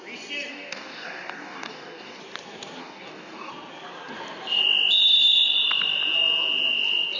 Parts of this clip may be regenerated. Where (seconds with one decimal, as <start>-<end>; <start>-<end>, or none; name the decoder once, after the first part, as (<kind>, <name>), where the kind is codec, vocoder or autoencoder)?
0.5-2.2 (codec, DAC); 2.8-3.5